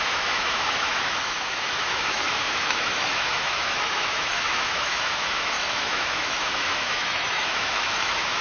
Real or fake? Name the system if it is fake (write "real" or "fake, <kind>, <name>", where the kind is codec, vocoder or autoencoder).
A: fake, autoencoder, DAC-VAE